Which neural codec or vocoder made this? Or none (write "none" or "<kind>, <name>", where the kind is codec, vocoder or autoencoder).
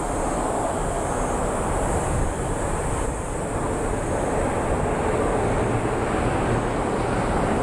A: none